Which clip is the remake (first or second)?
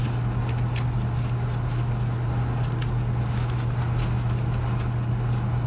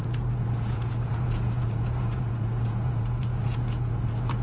second